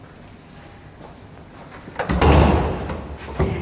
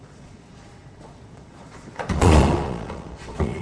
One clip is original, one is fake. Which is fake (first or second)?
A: second